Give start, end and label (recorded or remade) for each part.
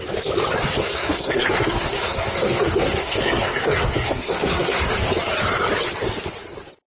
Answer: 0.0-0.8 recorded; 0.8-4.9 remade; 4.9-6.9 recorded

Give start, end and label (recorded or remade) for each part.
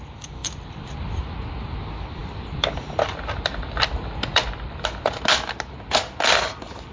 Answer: 0.0-0.4 recorded; 0.4-1.2 remade; 1.2-2.2 recorded; 2.2-5.0 remade; 5.0-6.9 recorded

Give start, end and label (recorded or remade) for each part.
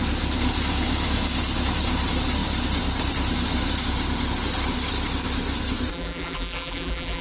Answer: 0.0-5.9 recorded; 5.9-7.2 remade